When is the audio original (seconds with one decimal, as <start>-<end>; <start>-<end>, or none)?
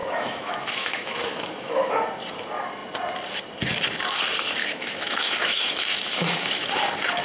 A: 1.9-4.6; 6.7-7.2